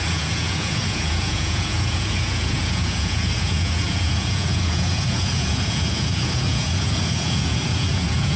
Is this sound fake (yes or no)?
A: yes